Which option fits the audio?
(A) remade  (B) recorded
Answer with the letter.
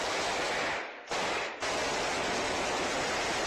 B